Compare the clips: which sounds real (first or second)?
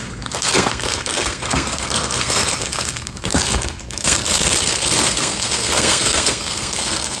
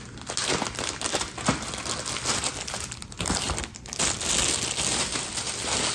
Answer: second